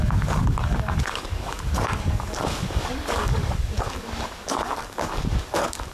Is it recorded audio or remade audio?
remade